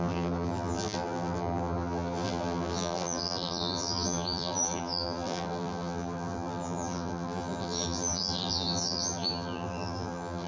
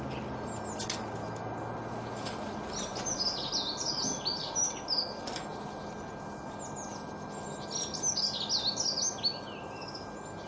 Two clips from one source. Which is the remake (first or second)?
first